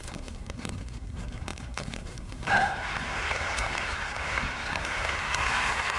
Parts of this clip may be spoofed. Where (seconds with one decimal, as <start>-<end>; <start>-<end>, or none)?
0.0-6.0